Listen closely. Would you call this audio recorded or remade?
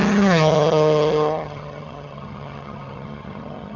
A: remade